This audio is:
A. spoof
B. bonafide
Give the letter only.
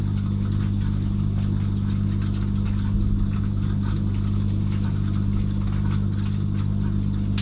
B